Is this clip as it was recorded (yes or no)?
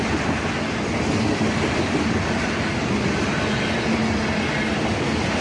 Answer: yes